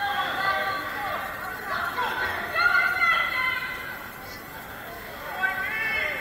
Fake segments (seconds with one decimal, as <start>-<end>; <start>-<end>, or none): 0.0-1.0; 4.7-5.3